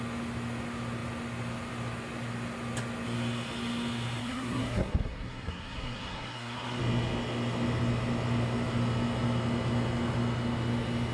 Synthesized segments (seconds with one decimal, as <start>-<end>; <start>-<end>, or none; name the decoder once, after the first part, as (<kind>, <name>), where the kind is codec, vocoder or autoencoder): 4.2-6.8 (codec, SNAC)